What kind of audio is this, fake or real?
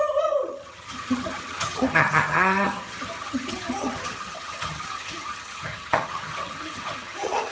fake